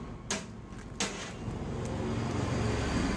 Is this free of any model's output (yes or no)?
yes